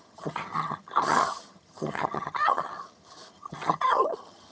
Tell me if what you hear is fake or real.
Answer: fake